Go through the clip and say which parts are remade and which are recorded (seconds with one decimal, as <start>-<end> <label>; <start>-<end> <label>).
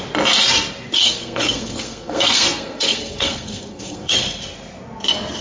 0.0-1.0 recorded; 1.0-4.2 remade; 4.2-5.4 recorded